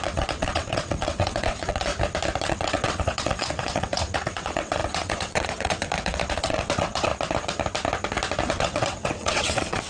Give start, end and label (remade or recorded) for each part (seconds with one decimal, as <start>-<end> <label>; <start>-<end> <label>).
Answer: 0.0-1.9 remade; 1.9-2.4 recorded; 2.4-7.1 remade; 7.1-8.5 recorded; 8.5-9.9 remade